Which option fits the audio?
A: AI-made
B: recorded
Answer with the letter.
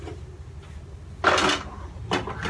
B